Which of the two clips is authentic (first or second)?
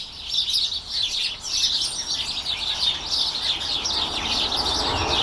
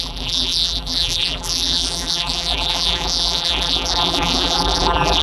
first